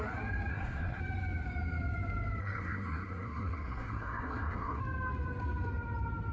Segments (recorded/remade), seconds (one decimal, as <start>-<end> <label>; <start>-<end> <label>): 0.0-0.5 recorded; 0.5-1.0 remade; 1.0-2.4 recorded; 2.4-4.8 remade; 4.8-6.3 recorded